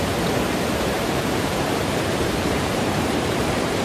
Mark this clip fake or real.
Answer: fake